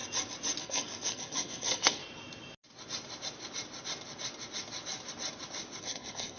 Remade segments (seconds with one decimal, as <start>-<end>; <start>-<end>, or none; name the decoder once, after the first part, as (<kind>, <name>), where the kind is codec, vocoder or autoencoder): 0.6-2.0 (codec, SNAC); 5.8-6.4